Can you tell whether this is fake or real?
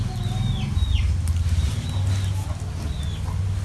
real